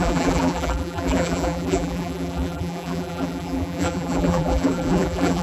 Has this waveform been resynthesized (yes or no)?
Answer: yes